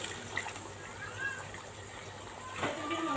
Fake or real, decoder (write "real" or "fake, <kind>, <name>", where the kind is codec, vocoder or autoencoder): real